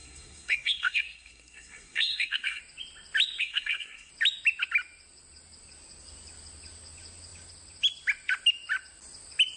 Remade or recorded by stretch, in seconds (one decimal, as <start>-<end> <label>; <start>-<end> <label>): 0.0-2.6 remade; 2.6-3.4 recorded; 3.4-4.1 remade; 4.1-9.6 recorded

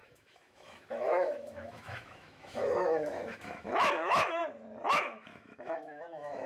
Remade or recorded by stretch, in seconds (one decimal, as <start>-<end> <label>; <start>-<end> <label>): 0.0-4.4 remade; 4.4-4.9 recorded; 4.9-6.5 remade

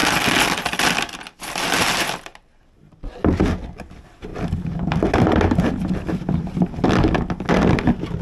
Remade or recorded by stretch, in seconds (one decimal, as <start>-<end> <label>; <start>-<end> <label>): 0.0-8.2 recorded

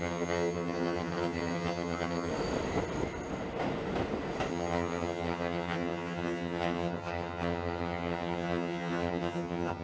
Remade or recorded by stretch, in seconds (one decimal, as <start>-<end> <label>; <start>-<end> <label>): 0.0-2.3 remade; 2.3-4.5 recorded; 4.5-9.8 remade

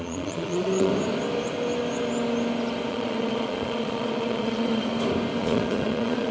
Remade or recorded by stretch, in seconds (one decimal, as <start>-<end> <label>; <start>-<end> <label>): 0.0-0.9 remade; 0.9-2.9 recorded; 2.9-4.9 remade; 4.9-5.4 recorded; 5.4-6.3 remade

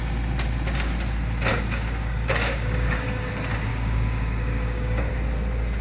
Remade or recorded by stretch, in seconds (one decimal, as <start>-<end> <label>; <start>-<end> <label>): 0.0-1.5 recorded; 1.5-3.3 remade; 3.3-3.7 recorded; 3.7-5.1 remade; 5.1-5.8 recorded

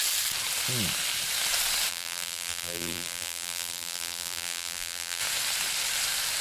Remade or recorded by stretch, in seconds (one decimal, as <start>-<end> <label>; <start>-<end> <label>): 0.0-1.9 recorded; 1.9-5.2 remade; 5.2-6.4 recorded